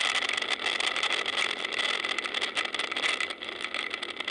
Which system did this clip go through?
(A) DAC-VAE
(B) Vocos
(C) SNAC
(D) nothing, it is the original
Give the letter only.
D